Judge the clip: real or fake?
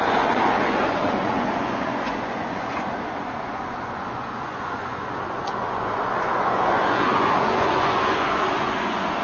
fake